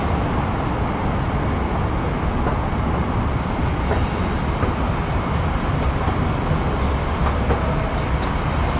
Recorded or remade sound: recorded